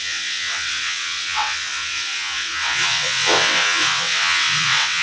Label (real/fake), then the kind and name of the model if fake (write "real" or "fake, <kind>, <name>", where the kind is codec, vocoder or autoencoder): fake, vocoder, WaveNeXt